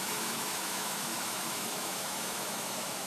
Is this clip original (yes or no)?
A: no